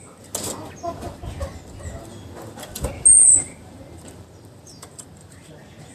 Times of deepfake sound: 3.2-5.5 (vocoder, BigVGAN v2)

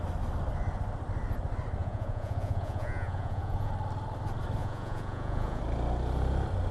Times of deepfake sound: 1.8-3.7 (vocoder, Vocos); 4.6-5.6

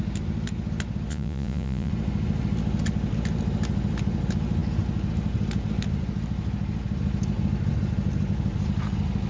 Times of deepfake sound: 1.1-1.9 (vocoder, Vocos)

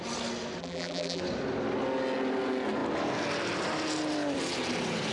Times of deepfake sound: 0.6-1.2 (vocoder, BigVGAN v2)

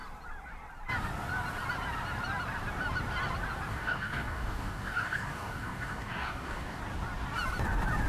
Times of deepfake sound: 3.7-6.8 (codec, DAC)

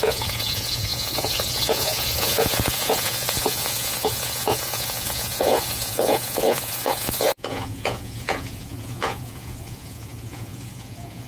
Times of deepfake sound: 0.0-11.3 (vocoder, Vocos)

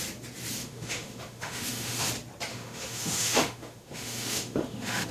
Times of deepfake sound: 0.6-2.1 (autoencoder, DAC-VAE); 2.5-5.1